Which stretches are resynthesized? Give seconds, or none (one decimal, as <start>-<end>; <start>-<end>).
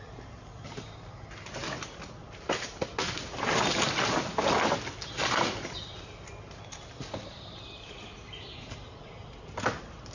none